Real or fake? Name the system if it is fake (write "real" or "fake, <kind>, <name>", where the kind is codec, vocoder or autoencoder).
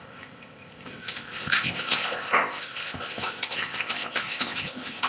fake, codec, ZipCodec